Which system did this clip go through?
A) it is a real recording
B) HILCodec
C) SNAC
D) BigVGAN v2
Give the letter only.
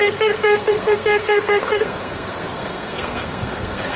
C